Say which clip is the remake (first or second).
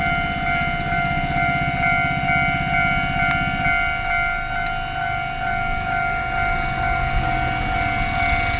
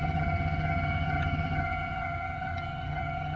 second